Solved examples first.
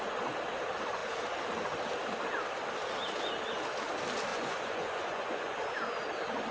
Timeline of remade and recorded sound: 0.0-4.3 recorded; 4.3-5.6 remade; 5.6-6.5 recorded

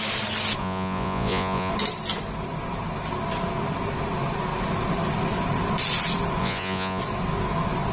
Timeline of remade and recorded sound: 0.0-0.6 recorded; 0.6-1.7 remade; 1.7-6.4 recorded; 6.4-7.0 remade; 7.0-7.9 recorded